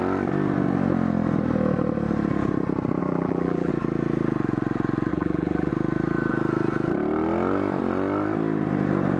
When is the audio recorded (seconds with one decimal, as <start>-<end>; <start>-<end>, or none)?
0.0-3.0; 3.7-5.1; 5.7-9.2